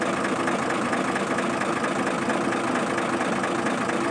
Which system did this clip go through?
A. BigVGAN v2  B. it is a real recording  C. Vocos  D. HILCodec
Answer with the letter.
B